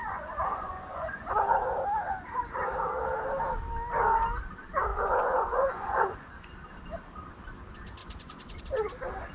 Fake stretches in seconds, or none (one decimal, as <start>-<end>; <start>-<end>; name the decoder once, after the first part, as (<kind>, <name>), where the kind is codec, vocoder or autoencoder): 0.0-1.3 (vocoder, Vocos); 4.9-6.5; 8.0-8.6